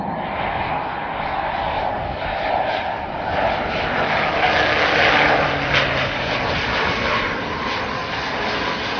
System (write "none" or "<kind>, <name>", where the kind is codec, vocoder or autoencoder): none